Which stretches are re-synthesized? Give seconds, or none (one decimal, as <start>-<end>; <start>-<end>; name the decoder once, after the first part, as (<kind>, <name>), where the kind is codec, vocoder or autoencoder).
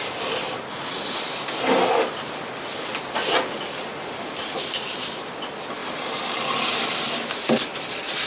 none